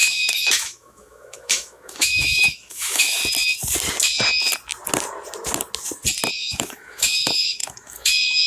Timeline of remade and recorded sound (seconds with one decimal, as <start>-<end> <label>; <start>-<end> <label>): 0.0-3.2 remade; 3.2-6.3 recorded; 6.3-8.5 remade